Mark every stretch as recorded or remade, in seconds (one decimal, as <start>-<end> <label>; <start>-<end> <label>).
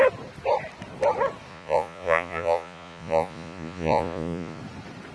0.0-1.5 recorded; 1.5-4.6 remade; 4.6-5.1 recorded